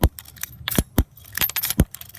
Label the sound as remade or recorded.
recorded